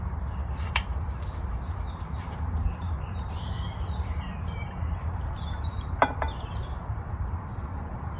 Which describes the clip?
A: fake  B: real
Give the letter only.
A